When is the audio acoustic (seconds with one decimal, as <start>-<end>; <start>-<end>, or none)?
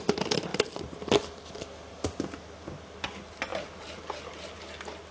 0.0-5.1